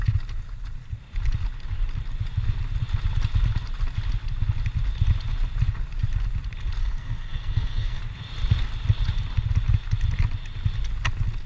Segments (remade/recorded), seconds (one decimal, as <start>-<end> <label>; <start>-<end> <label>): 0.0-6.8 recorded; 6.8-8.0 remade; 8.0-11.5 recorded